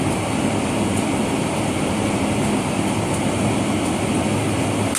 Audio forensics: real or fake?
real